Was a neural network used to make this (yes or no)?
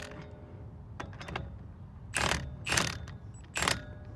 no